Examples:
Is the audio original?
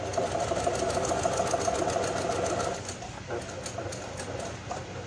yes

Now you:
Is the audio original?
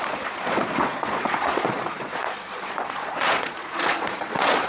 no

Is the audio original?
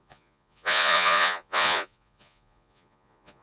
no